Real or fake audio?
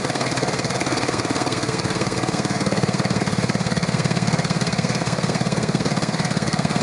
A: fake